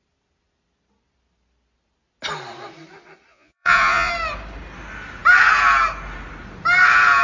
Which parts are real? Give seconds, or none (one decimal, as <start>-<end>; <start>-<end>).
0.0-3.3; 4.1-7.2